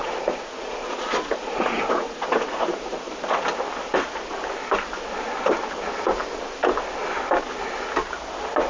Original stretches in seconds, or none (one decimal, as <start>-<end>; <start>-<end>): 3.1-8.7